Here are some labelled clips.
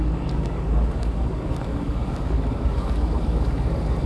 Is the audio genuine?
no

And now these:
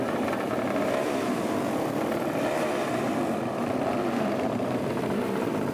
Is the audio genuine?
no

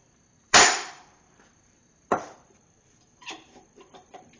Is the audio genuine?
no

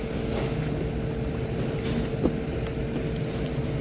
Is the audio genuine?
yes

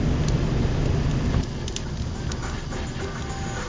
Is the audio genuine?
yes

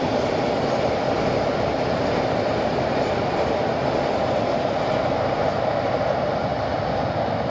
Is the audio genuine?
yes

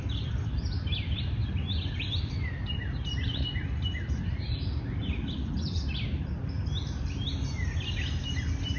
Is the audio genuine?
yes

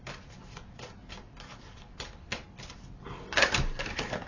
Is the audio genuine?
yes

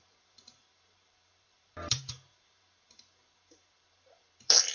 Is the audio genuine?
no